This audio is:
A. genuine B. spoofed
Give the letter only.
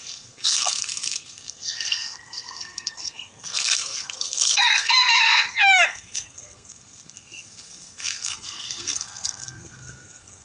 B